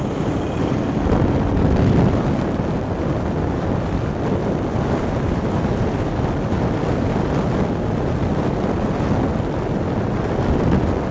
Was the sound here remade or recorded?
recorded